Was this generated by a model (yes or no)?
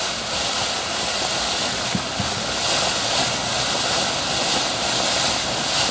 no